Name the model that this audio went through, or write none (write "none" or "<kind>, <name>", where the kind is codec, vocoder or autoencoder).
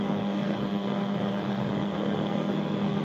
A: codec, SNAC